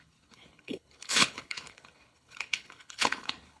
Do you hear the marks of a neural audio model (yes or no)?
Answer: yes